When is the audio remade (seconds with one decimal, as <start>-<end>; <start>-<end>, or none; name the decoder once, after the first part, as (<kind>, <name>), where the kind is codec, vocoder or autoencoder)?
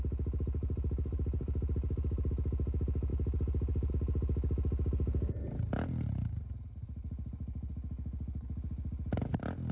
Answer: 0.6-2.3 (vocoder, BigVGAN v2); 3.1-3.9; 7.0-7.7